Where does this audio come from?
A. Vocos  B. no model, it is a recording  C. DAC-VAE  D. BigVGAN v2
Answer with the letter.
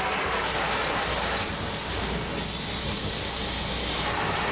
B